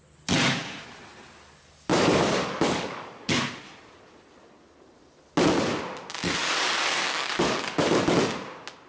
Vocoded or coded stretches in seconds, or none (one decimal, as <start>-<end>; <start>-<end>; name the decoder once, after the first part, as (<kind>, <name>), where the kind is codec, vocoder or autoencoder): 1.9-3.3 (codec, DAC); 6.4-8.0

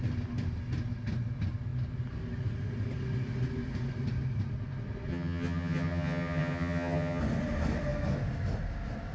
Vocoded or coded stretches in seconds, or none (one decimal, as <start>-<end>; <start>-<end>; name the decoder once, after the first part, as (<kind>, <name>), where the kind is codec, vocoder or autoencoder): 5.1-7.2 (vocoder, HiFi-GAN)

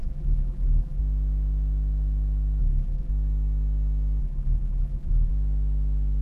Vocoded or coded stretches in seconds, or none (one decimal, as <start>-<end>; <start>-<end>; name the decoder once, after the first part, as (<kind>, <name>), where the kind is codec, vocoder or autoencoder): 0.0-1.0 (vocoder, BigVGAN v2); 2.6-3.1; 4.2-5.3

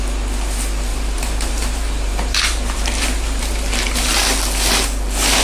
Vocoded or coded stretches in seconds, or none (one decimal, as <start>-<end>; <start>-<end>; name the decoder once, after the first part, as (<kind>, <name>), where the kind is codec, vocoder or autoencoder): 0.9-4.1 (vocoder, BigVGAN v2)

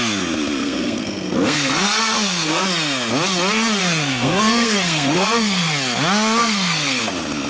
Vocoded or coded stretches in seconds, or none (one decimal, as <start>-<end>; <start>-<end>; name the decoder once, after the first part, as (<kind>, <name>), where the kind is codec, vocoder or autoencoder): 0.6-2.6 (codec, SNAC); 3.8-5.7; 6.4-7.0

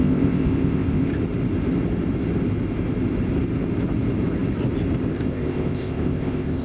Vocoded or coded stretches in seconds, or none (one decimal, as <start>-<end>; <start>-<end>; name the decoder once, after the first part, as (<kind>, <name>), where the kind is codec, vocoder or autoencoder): 0.0-1.1 (codec, ZipCodec); 5.1-6.6

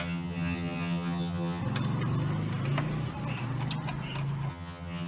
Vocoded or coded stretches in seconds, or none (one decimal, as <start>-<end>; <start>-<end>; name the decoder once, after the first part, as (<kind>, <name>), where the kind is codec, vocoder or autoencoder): 0.0-1.6 (vocoder, HiFi-GAN); 4.5-5.1

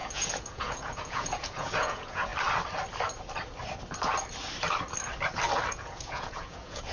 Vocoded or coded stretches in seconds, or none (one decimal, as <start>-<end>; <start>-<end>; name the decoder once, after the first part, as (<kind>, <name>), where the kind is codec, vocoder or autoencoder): 0.0-2.3 (vocoder, Vocos); 5.7-6.9